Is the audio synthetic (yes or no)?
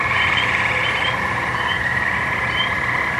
yes